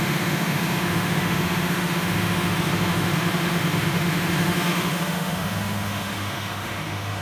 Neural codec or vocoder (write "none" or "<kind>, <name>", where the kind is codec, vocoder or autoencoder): autoencoder, DAC-VAE